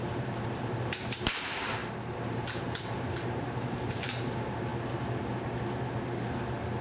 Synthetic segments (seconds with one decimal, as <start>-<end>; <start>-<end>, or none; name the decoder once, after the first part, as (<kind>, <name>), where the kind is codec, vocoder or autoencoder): 0.0-4.7 (vocoder, BigVGAN v2)